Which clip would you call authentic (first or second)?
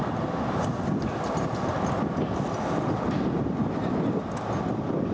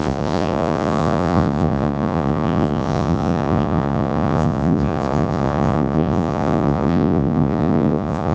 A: first